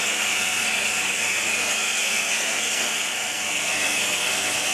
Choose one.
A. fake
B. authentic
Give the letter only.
A